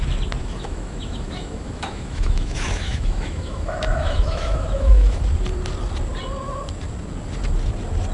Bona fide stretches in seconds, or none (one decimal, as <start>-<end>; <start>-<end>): 0.0-0.4; 5.2-8.1